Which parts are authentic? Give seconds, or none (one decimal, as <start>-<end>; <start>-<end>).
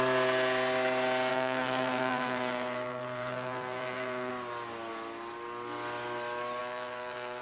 0.0-1.3; 4.3-6.6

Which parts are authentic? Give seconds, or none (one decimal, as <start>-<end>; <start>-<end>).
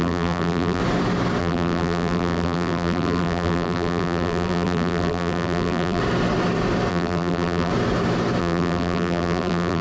0.8-1.4; 6.0-6.9; 7.7-8.4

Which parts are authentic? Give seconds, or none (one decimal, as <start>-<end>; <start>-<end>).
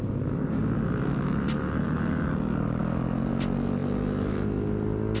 0.0-5.2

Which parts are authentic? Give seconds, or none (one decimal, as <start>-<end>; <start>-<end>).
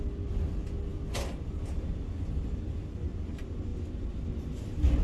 0.0-3.7; 4.6-5.0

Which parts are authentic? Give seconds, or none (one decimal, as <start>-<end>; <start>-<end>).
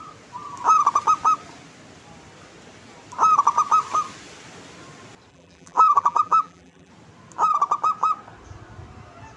0.0-5.3; 6.9-9.4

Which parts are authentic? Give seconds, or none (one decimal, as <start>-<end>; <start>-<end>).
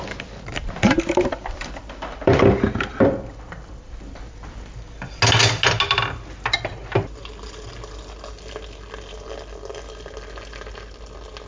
0.0-0.5; 5.2-11.5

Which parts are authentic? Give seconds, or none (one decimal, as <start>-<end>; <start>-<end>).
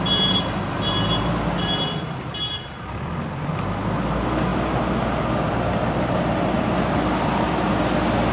0.0-8.3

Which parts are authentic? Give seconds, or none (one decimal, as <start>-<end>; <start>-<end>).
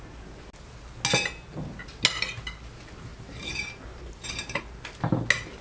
0.0-3.1; 4.6-5.6